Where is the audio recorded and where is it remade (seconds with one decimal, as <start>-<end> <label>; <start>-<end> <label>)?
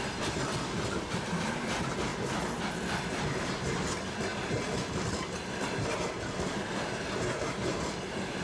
0.0-2.1 remade; 2.1-2.7 recorded; 2.7-8.4 remade